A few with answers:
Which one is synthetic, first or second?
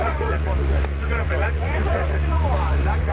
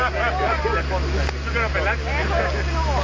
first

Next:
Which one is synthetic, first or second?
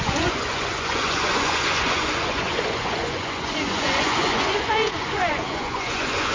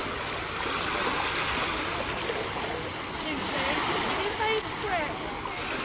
first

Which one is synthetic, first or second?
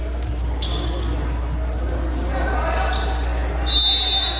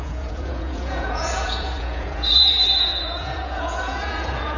second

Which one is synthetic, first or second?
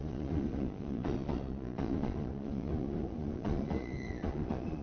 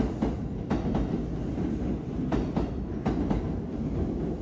first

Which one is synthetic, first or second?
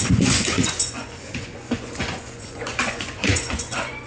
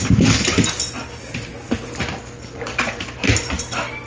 first